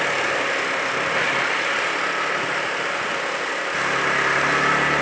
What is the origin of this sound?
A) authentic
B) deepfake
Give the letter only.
A